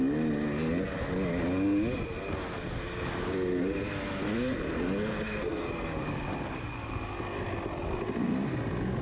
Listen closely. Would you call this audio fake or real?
real